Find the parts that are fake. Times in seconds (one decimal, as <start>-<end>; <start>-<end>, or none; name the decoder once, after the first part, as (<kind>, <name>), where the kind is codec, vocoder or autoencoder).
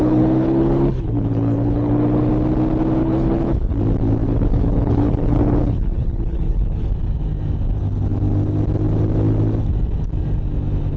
0.0-2.3 (codec, HILCodec); 3.0-3.8; 4.2-6.9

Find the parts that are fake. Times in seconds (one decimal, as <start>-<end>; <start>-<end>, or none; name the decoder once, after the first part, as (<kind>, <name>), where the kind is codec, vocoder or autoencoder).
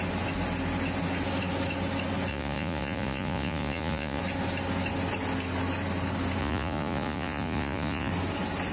2.3-4.2 (vocoder, Vocos); 6.4-8.1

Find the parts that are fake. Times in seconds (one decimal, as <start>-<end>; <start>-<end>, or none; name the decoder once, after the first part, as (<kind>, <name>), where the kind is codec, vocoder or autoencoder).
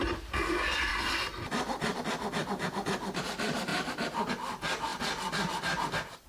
0.9-2.0 (vocoder, BigVGAN v2); 2.4-3.3; 3.7-4.3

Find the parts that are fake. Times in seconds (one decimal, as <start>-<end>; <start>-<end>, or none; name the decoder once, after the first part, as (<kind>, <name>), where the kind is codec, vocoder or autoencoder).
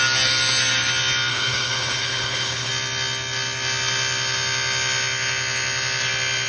1.3-2.7 (codec, HILCodec)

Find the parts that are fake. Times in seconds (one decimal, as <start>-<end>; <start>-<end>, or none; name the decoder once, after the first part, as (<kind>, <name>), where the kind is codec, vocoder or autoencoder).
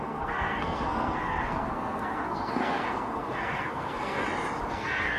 0.0-4.2 (codec, SNAC); 4.7-5.2